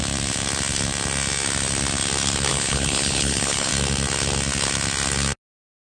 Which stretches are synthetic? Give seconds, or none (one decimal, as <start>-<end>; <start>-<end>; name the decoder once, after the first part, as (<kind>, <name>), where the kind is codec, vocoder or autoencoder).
2.5-3.7 (codec, HILCodec)